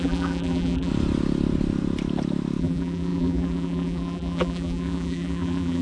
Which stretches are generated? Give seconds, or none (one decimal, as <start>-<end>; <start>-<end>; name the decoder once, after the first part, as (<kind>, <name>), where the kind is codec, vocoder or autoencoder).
0.0-0.9 (vocoder, BigVGAN v2); 2.6-5.8